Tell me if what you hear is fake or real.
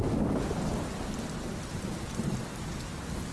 real